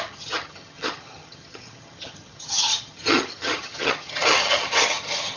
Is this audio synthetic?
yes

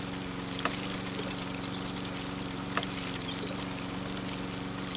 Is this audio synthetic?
no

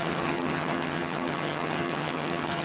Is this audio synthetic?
yes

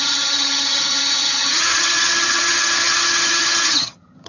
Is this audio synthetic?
yes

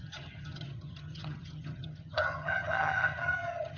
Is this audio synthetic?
yes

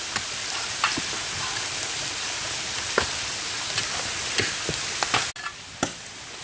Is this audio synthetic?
no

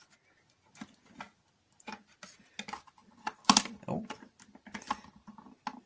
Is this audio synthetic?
no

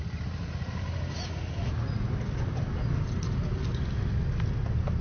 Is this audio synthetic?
no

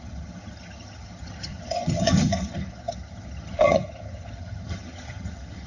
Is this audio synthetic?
yes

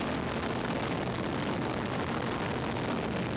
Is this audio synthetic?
no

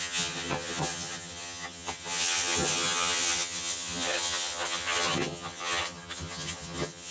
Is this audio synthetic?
yes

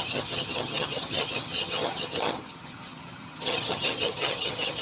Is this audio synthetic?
yes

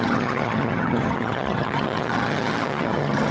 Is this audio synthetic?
yes